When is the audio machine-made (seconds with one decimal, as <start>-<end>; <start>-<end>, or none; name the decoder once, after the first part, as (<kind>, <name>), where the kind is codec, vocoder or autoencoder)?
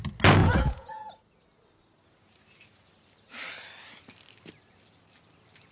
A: 0.4-1.2 (vocoder, Vocos)